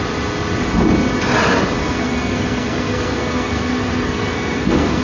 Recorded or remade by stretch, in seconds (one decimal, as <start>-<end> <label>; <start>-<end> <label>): 0.0-1.8 recorded; 1.8-5.0 remade